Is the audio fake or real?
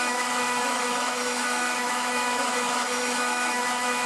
fake